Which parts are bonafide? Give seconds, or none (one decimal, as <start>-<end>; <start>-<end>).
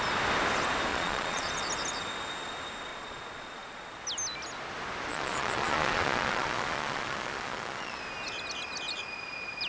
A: 0.0-0.9; 1.5-2.9; 3.9-5.1; 8.0-9.7